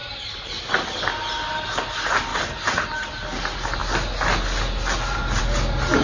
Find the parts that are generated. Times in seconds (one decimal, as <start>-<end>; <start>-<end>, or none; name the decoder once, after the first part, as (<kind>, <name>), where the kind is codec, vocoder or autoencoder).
0.0-0.7 (vocoder, BigVGAN v2); 2.3-3.1